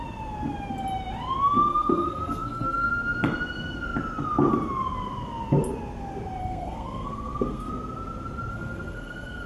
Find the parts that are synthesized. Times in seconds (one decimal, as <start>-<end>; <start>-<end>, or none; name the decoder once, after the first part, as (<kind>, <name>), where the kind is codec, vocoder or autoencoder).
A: 1.7-2.9 (codec, SNAC); 6.4-7.7; 8.5-9.5